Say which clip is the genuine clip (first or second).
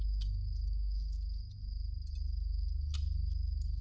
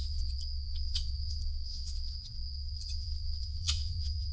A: first